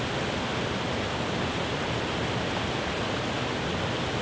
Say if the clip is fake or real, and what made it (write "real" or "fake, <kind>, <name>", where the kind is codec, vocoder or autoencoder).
real